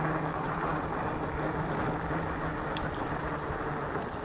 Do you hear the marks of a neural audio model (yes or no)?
no